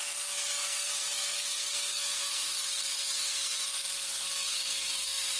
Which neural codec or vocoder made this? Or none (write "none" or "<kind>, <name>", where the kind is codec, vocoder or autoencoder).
codec, SNAC